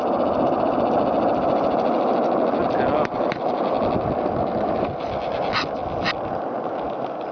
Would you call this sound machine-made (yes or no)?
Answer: no